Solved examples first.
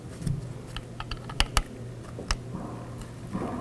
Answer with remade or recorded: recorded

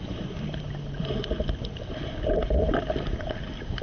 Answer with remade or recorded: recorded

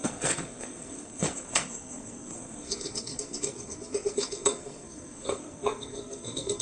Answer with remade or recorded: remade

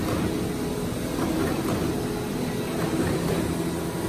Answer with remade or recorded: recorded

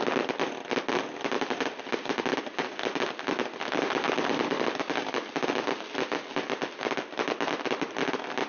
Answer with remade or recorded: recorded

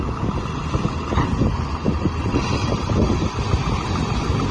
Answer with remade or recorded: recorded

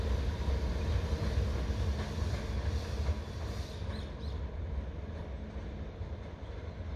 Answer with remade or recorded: recorded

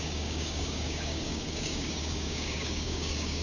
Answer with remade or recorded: remade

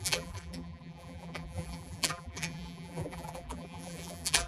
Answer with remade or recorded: remade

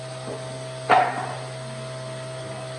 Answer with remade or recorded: recorded